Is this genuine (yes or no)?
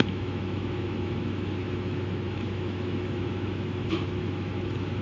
no